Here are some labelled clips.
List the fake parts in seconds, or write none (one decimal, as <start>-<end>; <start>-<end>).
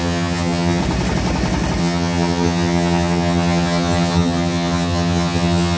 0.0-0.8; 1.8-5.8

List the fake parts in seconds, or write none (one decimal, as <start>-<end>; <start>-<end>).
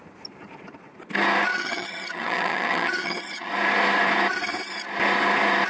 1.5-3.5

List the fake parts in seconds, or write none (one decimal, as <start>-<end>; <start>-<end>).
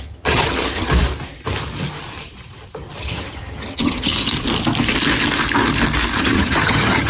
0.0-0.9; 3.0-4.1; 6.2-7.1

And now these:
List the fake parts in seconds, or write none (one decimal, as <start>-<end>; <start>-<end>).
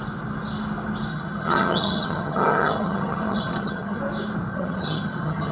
1.1-4.0; 4.5-5.5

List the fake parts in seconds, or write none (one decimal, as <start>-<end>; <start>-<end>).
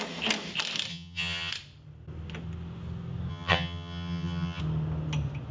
0.9-1.5; 3.3-4.6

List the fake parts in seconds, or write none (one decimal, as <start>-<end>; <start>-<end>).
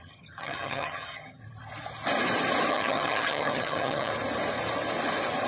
0.0-1.4; 2.7-4.1